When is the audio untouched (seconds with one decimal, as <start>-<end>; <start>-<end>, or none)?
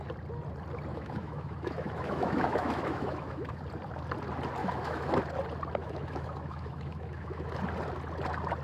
0.0-0.9; 3.6-4.6; 5.2-5.8; 7.5-8.6